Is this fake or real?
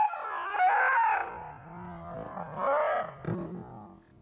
real